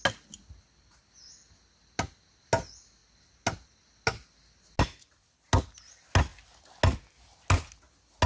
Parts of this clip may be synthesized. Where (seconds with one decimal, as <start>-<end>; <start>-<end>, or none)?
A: none